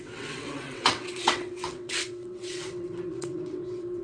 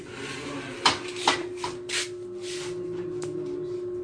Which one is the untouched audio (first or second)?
second